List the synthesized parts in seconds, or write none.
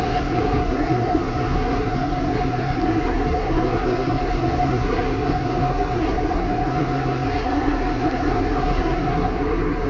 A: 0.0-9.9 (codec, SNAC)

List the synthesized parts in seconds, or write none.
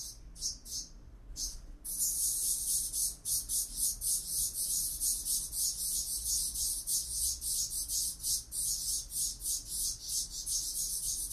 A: none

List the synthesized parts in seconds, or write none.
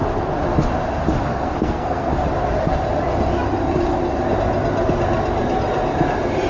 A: 1.3-2.1 (codec, SNAC)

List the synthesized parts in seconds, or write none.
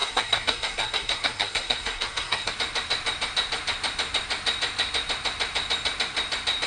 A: 0.0-2.5 (codec, SNAC)